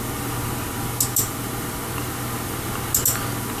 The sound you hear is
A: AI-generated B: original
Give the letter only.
B